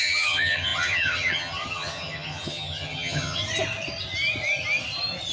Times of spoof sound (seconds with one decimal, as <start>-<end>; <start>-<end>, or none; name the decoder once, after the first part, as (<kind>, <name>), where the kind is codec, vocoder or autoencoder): 0.0-3.4 (vocoder, HiFi-GAN)